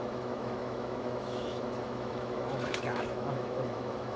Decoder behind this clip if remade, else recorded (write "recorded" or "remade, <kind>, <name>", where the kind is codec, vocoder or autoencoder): remade, autoencoder, DAC-VAE